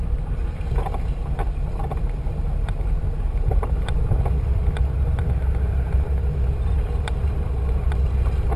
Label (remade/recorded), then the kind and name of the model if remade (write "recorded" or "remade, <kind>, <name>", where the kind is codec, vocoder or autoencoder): recorded